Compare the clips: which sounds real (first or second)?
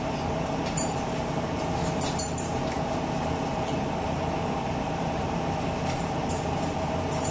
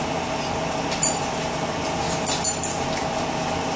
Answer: second